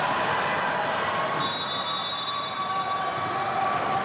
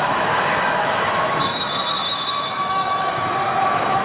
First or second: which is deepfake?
second